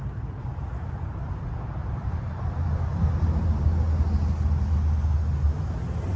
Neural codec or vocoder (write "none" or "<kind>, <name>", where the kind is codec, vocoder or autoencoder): none